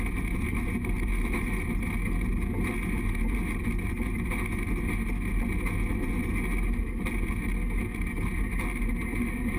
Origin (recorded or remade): recorded